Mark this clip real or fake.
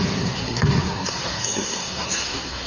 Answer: fake